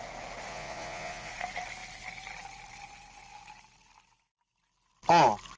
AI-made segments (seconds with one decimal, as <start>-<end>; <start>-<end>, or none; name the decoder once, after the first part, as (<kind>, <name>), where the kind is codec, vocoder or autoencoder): 0.5-1.3 (vocoder, Vocos)